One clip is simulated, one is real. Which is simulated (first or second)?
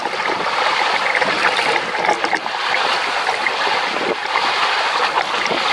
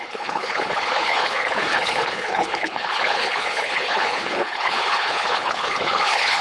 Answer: second